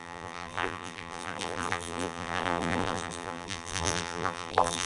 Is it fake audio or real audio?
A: fake